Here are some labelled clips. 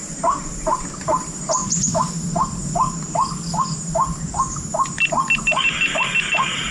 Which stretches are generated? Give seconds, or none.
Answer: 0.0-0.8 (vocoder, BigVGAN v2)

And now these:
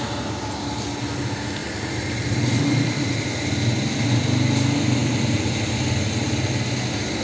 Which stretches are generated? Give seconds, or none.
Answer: 1.6-3.2 (vocoder, BigVGAN v2); 5.0-5.7

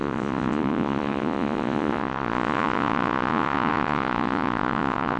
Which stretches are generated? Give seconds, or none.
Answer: 0.0-5.2 (vocoder, Vocos)

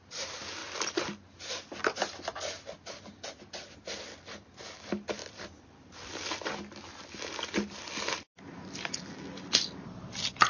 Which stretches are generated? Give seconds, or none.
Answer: none